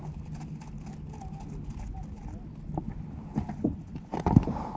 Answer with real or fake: real